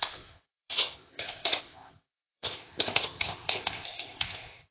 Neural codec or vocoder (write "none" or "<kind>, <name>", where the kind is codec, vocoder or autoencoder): codec, ZipCodec